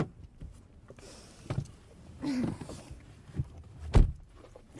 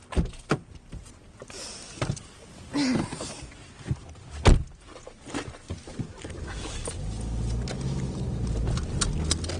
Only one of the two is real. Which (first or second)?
second